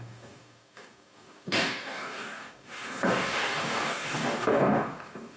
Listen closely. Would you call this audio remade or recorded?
remade